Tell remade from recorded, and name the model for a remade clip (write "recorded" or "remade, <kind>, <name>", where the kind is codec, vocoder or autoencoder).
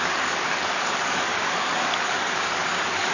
remade, codec, DAC